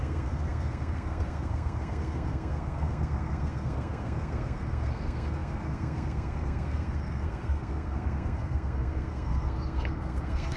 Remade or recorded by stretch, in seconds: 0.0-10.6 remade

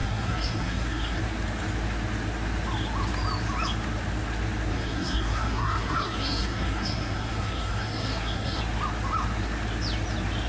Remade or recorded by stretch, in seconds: 0.0-1.2 remade; 1.2-4.7 recorded; 4.7-8.6 remade; 8.6-10.5 recorded

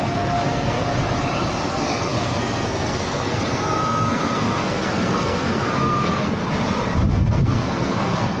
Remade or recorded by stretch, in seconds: 0.0-0.8 remade; 0.8-1.7 recorded; 1.7-6.4 remade; 6.4-7.1 recorded; 7.1-8.4 remade

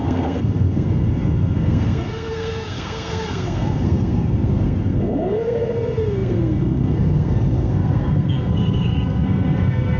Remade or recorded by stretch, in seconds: 0.0-10.0 remade

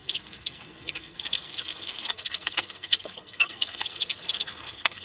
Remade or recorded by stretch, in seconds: 0.0-5.0 remade